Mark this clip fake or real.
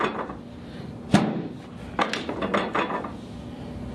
real